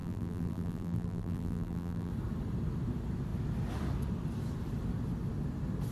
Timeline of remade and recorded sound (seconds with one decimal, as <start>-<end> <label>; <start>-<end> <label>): 0.0-2.1 remade; 2.1-5.9 recorded